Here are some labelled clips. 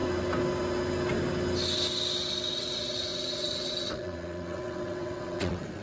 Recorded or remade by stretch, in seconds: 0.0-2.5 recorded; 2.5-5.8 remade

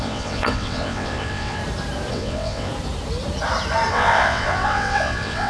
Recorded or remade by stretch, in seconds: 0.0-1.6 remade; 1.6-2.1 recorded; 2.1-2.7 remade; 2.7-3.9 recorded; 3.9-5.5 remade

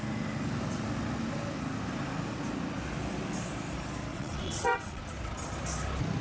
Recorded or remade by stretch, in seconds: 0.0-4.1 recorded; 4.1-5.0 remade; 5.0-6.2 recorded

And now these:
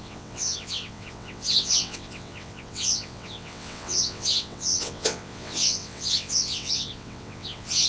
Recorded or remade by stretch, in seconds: 0.0-7.9 remade